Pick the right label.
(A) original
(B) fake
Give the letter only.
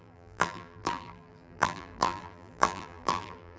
B